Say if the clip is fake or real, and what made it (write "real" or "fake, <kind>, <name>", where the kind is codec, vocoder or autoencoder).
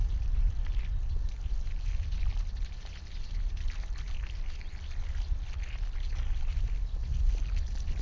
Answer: real